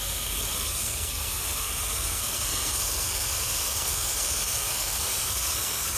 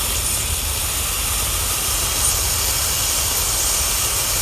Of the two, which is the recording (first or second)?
second